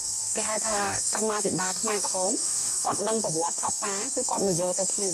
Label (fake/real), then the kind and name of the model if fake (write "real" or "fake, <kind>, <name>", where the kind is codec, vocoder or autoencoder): fake, codec, DAC